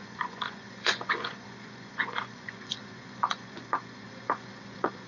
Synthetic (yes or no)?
yes